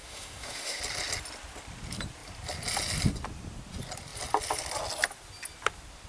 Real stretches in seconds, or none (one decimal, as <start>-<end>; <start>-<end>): 0.8-6.1